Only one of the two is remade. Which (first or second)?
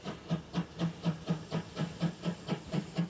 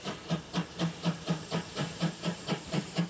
second